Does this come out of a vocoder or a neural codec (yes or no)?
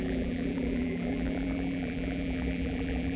yes